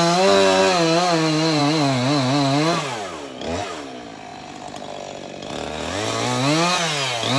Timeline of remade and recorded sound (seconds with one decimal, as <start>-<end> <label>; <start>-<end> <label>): 0.0-7.4 recorded